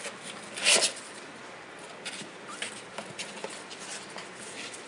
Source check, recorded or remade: recorded